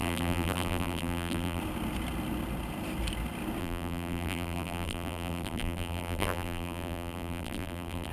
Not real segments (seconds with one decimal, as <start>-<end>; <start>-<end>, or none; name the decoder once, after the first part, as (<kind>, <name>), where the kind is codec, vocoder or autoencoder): 0.0-1.6 (vocoder, BigVGAN v2); 3.6-8.1